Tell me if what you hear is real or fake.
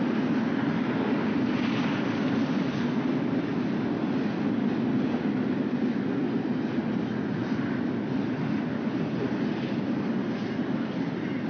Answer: real